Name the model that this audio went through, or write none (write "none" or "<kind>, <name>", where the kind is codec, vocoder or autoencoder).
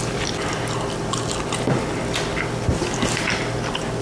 none